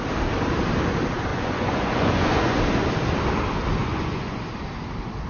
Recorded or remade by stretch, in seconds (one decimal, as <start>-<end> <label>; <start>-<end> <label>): 0.0-1.3 recorded; 1.3-2.6 remade; 2.6-3.8 recorded; 3.8-4.4 remade; 4.4-5.3 recorded